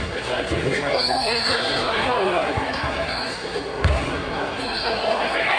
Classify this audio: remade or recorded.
remade